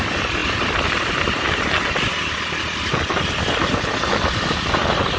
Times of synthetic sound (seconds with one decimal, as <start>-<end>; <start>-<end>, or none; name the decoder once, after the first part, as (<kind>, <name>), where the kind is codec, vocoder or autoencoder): none